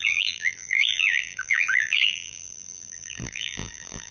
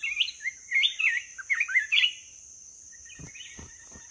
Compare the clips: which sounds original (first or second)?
second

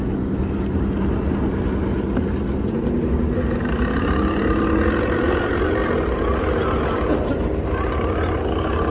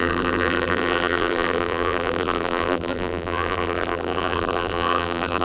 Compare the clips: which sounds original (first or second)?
first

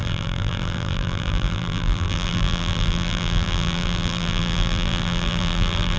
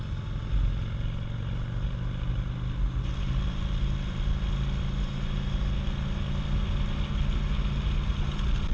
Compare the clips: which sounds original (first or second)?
second